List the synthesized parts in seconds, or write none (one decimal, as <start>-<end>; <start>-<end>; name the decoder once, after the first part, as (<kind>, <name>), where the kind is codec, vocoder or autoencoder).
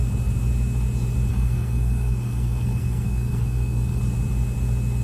1.3-4.0 (codec, SNAC)